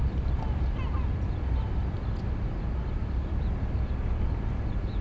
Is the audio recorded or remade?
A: recorded